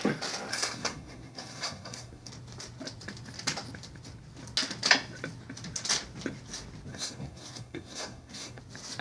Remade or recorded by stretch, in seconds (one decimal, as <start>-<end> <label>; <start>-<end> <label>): 0.0-0.5 recorded; 0.5-2.3 remade; 2.3-6.9 recorded; 6.9-8.6 remade; 8.6-9.0 recorded

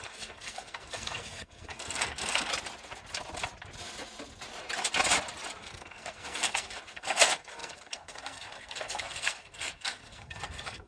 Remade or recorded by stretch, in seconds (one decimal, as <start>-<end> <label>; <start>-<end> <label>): 0.0-2.5 remade; 2.5-5.6 recorded; 5.6-10.9 remade

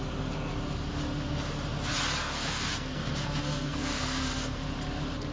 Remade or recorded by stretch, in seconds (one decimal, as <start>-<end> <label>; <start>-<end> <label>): 0.0-2.2 recorded; 2.2-4.6 remade; 4.6-5.3 recorded

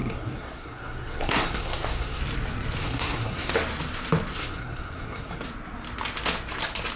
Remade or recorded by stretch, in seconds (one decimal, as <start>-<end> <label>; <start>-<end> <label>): 0.0-2.2 remade; 2.2-2.8 recorded; 2.8-3.5 remade; 3.5-4.3 recorded; 4.3-5.4 remade; 5.4-7.0 recorded

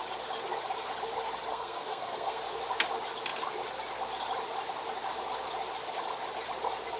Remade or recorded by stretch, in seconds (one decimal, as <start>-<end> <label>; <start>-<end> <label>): 0.0-1.5 recorded; 1.5-2.4 remade; 2.4-7.0 recorded

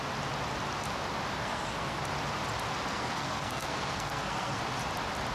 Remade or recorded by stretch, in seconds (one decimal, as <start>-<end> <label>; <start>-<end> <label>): 0.0-1.4 recorded; 1.4-2.0 remade; 2.0-2.9 recorded; 2.9-4.6 remade; 4.6-5.3 recorded

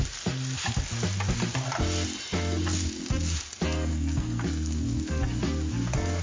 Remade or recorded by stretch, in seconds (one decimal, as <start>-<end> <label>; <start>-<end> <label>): 0.0-3.9 recorded; 3.9-5.4 remade; 5.4-6.2 recorded